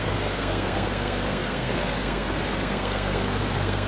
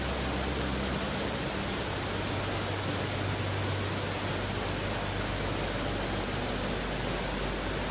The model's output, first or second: first